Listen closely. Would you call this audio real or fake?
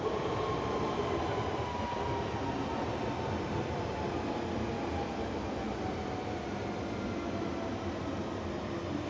real